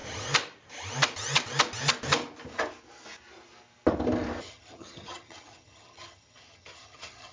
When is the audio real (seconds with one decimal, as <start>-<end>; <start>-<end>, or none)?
0.0-4.4